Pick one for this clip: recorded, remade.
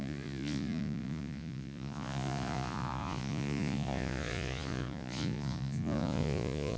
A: remade